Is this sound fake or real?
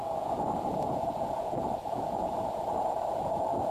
fake